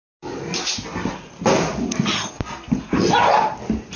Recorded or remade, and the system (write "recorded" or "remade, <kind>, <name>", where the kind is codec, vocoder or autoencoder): recorded